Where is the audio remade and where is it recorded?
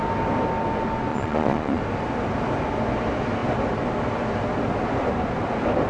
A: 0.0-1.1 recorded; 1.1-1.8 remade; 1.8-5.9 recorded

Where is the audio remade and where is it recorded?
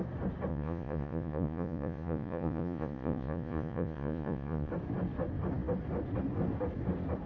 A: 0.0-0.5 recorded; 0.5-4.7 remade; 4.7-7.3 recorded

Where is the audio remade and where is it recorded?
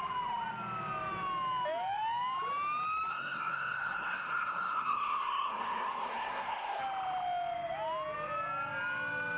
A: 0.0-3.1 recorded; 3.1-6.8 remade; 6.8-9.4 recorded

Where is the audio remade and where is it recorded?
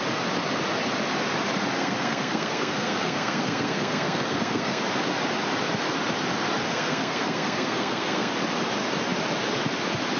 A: 0.0-1.8 recorded; 1.8-4.8 remade; 4.8-6.6 recorded; 6.6-8.3 remade; 8.3-10.2 recorded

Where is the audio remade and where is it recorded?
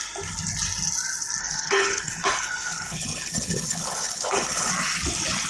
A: 0.0-1.4 recorded; 1.4-4.7 remade; 4.7-5.5 recorded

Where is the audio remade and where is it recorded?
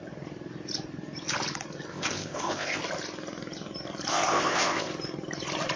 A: 0.0-1.9 recorded; 1.9-2.8 remade; 2.8-4.1 recorded; 4.1-4.9 remade; 4.9-5.8 recorded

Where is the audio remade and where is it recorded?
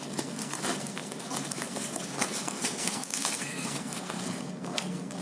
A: 0.0-5.2 remade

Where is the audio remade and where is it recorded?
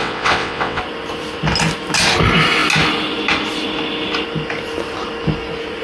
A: 0.0-0.8 remade; 0.8-5.8 recorded